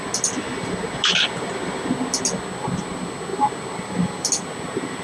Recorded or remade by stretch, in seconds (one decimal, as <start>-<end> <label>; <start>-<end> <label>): 0.0-5.0 recorded